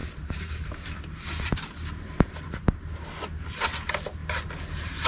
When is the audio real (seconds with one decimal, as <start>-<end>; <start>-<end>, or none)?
2.8-5.1